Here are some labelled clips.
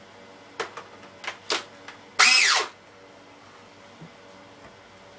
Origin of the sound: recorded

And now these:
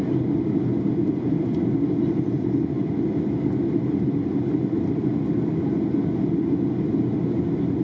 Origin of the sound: recorded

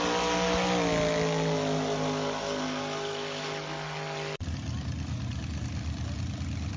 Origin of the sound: recorded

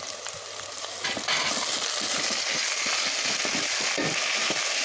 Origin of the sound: recorded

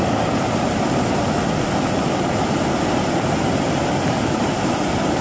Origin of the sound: recorded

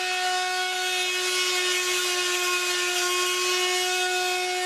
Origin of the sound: recorded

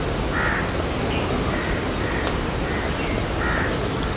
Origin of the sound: recorded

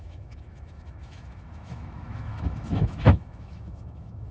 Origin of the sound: remade